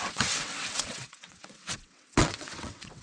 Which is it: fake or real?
fake